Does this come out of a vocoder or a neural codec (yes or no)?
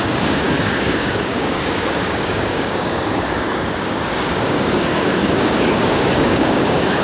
yes